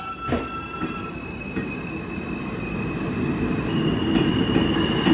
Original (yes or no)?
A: yes